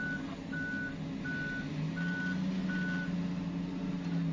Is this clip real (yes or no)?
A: yes